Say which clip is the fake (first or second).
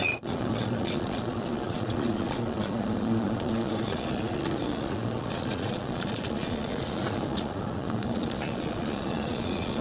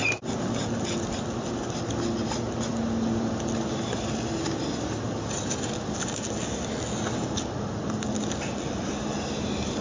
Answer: first